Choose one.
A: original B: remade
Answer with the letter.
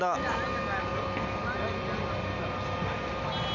A